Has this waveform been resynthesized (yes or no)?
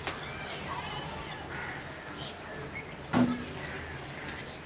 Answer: no